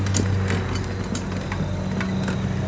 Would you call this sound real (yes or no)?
yes